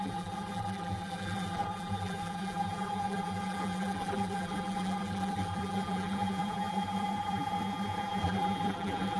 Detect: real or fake fake